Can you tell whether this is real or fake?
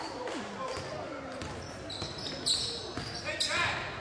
real